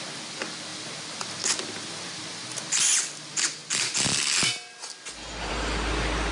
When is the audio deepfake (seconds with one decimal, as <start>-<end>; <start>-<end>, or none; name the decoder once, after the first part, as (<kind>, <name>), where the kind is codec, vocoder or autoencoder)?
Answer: none